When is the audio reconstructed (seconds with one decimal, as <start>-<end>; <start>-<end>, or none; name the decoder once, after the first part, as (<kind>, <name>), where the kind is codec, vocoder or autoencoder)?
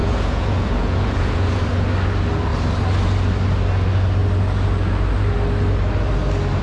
0.0-1.6 (vocoder, Vocos)